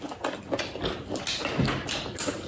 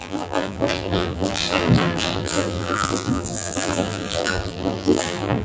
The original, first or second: first